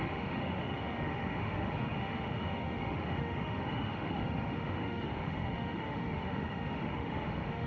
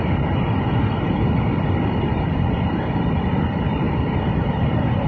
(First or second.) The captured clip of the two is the second